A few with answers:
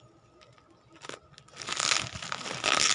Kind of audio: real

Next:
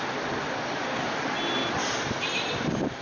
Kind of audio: real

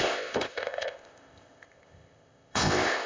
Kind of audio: fake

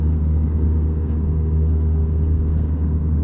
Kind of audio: fake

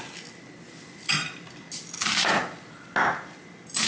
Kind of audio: real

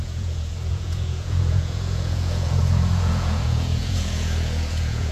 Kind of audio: fake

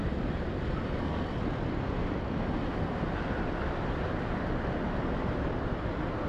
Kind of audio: real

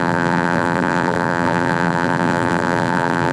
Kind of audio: fake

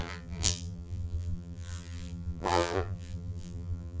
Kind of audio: fake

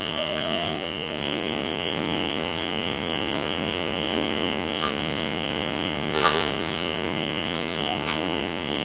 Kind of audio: fake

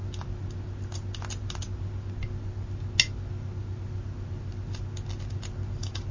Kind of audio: real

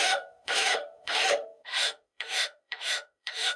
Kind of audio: fake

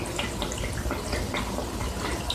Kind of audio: real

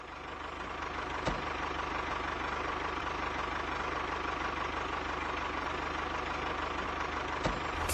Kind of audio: real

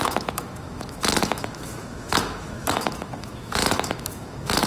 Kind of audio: fake